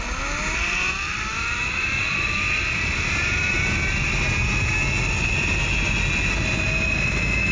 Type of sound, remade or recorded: recorded